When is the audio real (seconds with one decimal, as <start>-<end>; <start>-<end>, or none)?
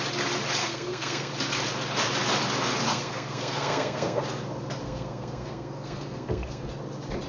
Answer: 0.0-0.6; 1.3-2.9; 4.2-4.8; 6.7-7.3